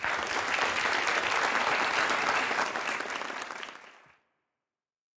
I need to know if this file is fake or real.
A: real